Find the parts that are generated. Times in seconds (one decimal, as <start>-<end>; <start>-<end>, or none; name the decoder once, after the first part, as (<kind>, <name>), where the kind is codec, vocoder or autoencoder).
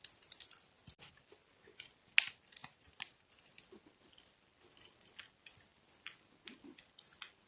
2.6-3.6 (vocoder, BigVGAN v2)